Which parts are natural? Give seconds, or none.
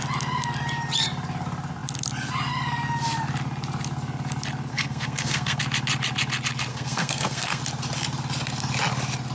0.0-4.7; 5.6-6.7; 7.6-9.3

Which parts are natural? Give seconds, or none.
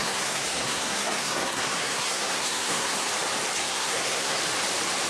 3.1-3.6; 4.4-5.1